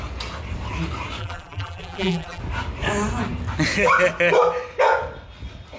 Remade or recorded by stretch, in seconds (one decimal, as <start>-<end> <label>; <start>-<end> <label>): 0.0-1.2 recorded; 1.2-2.4 remade; 2.4-5.8 recorded